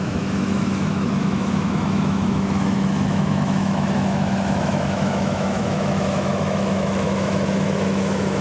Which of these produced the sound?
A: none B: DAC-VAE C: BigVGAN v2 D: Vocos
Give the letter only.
B